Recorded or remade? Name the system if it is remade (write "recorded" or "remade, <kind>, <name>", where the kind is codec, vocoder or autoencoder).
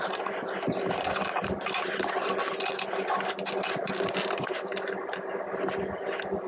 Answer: recorded